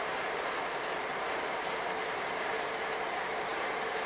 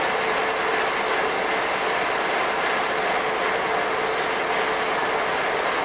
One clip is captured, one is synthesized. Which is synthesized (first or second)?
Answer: first